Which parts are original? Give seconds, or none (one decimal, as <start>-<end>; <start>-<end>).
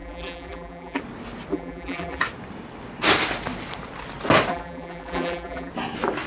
1.0-1.5; 2.2-4.5; 5.7-6.3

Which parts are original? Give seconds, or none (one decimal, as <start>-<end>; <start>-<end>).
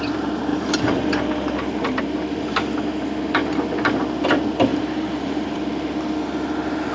0.0-0.5; 2.0-4.7; 5.6-6.9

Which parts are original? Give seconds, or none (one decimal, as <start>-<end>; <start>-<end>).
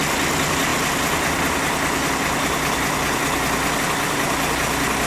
0.0-5.1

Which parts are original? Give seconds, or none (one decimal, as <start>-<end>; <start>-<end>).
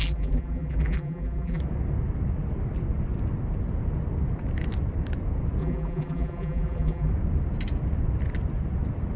1.6-5.6; 7.1-9.2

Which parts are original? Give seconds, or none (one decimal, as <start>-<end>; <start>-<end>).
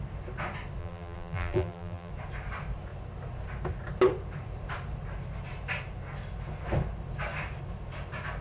0.0-0.8; 2.1-8.4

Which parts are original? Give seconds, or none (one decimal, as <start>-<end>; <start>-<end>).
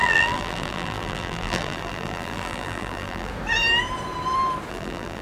3.3-4.7